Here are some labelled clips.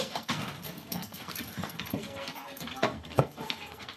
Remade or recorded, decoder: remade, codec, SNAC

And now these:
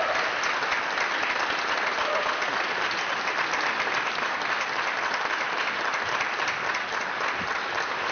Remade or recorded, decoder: remade, vocoder, BigVGAN v2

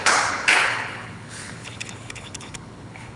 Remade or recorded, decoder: remade, codec, HILCodec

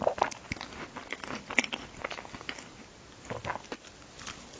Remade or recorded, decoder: recorded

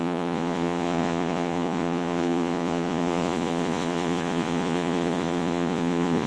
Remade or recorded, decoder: remade, vocoder, Vocos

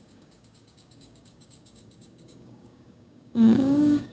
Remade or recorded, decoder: remade, codec, DAC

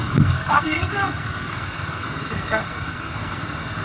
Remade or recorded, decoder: remade, codec, SNAC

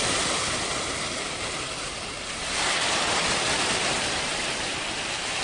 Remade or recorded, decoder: remade, vocoder, BigVGAN v2